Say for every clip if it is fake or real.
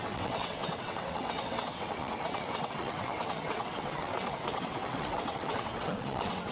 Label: fake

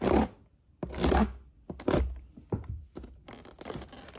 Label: real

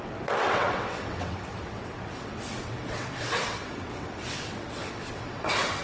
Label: fake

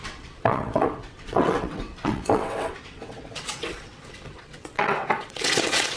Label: fake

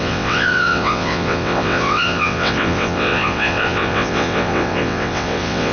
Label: fake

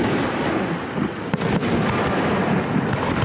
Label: real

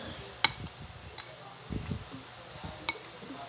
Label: real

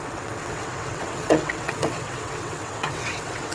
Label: fake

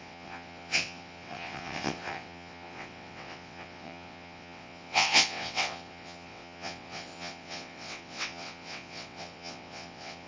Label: fake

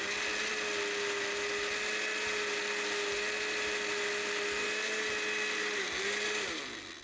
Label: real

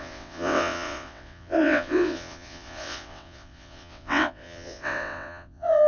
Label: fake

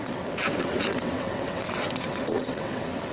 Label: fake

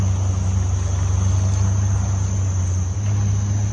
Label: real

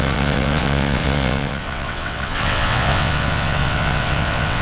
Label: fake